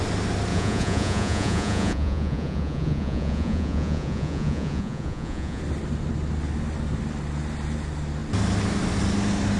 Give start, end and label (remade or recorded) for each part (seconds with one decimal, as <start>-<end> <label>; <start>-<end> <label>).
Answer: 0.0-0.5 recorded; 0.5-5.6 remade; 5.6-9.6 recorded

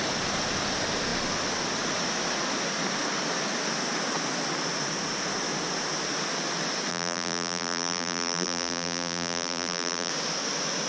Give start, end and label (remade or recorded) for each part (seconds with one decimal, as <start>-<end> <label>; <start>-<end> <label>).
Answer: 0.0-6.9 recorded; 6.9-10.1 remade; 10.1-10.9 recorded

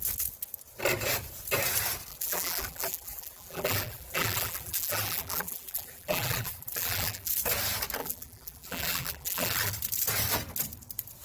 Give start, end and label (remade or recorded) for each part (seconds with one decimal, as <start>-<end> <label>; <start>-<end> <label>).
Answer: 0.0-2.1 recorded; 2.1-7.3 remade; 7.3-8.0 recorded; 8.0-9.7 remade; 9.7-11.2 recorded

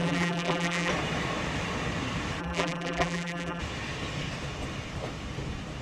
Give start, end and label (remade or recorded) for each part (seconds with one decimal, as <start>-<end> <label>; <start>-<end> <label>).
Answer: 0.0-0.9 remade; 0.9-2.4 recorded; 2.4-3.6 remade; 3.6-5.8 recorded